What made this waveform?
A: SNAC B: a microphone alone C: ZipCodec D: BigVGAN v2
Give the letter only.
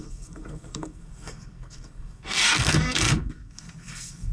A